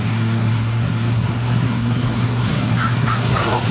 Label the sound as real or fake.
fake